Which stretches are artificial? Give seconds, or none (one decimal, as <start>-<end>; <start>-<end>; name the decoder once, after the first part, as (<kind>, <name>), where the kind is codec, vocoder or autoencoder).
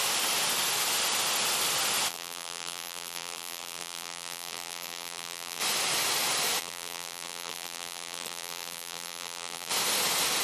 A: 2.1-5.6 (vocoder, BigVGAN v2); 6.6-9.7